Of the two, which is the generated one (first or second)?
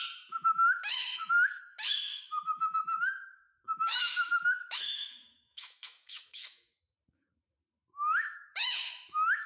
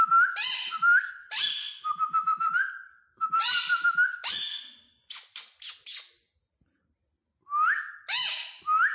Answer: first